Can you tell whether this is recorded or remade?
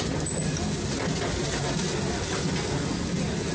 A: recorded